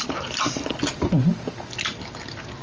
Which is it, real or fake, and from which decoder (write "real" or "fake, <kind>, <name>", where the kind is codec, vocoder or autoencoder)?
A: real